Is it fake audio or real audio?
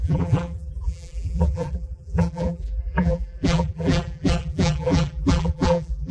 fake